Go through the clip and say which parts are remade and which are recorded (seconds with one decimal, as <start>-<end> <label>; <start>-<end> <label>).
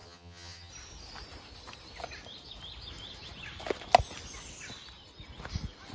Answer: 0.0-0.7 remade; 0.7-5.9 recorded